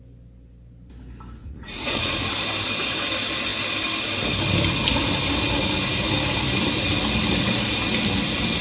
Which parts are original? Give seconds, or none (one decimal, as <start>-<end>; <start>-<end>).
0.0-1.4; 2.3-8.6